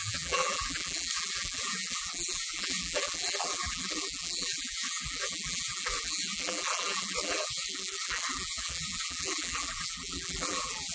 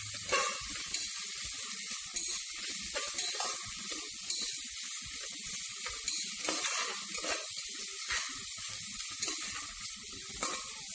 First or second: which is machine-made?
first